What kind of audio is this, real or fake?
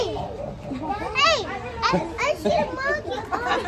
real